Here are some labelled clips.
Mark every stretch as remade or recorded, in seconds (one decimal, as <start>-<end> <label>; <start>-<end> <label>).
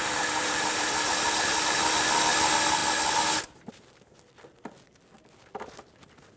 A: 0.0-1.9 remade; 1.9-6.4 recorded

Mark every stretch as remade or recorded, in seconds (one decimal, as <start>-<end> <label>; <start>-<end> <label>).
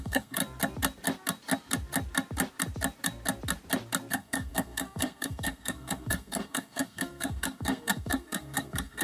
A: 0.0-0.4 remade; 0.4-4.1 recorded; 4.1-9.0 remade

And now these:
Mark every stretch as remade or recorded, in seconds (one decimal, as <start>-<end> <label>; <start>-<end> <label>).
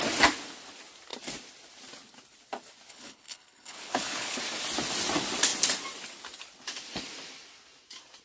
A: 0.0-2.9 recorded; 2.9-4.4 remade; 4.4-8.2 recorded